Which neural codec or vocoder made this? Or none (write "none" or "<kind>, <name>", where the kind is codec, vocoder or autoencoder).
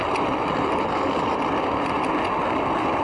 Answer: none